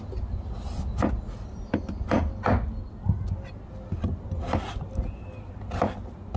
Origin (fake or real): real